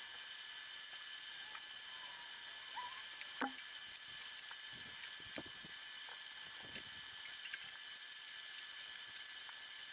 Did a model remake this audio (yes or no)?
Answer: no